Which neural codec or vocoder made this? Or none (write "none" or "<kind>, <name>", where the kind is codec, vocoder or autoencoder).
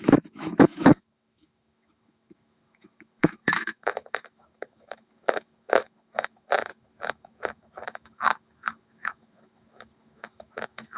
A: autoencoder, DAC-VAE